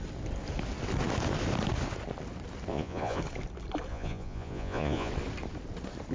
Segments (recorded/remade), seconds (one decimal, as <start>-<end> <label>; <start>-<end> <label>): 0.0-2.7 recorded; 2.7-3.2 remade; 3.2-3.9 recorded; 3.9-5.1 remade; 5.1-6.1 recorded